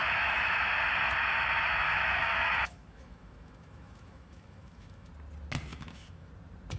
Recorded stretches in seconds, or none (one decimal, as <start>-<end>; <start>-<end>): 0.6-1.9; 5.1-5.7; 6.3-6.8

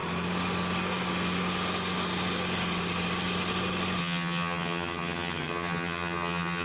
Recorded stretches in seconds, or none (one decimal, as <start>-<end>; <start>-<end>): 0.0-4.0

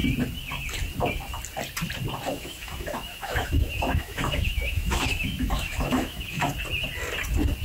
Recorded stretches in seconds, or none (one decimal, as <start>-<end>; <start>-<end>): 0.0-2.3; 6.5-7.6